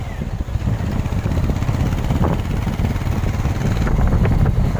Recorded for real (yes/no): yes